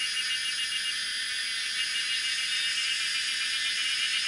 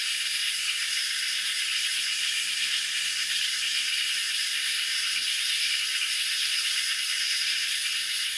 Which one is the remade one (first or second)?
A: second